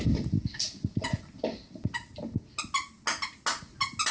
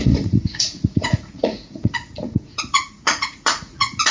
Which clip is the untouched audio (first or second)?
first